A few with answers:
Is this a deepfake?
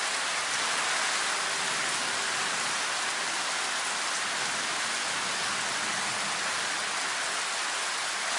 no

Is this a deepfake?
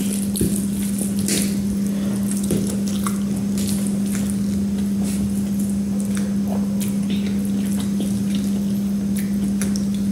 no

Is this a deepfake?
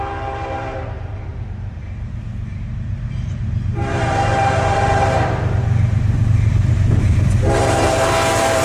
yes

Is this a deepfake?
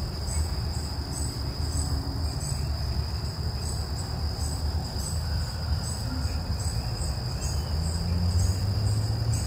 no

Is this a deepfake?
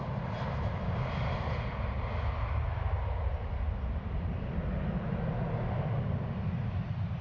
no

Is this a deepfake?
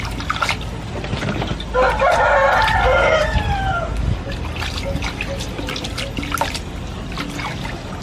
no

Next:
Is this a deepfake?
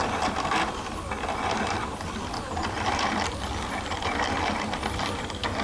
yes